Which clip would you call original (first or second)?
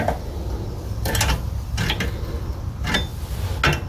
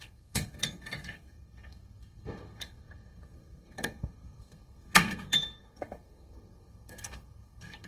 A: first